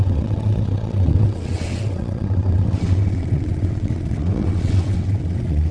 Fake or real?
fake